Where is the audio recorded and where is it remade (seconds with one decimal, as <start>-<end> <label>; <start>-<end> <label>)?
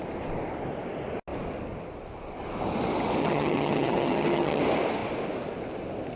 0.0-3.2 recorded; 3.2-4.6 remade; 4.6-6.2 recorded